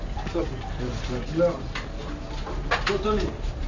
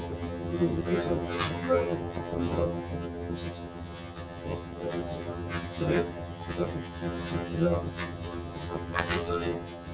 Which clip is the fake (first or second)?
second